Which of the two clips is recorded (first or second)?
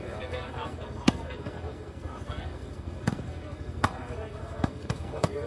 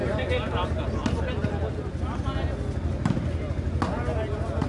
second